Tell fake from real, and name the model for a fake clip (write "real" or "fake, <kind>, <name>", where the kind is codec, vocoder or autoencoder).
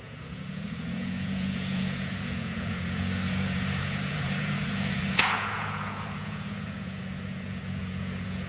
fake, vocoder, Vocos